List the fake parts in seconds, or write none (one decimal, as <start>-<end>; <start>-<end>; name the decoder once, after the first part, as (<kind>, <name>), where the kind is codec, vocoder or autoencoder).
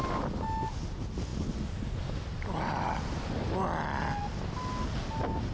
none